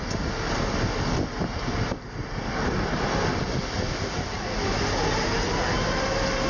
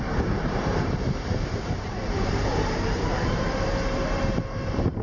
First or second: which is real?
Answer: first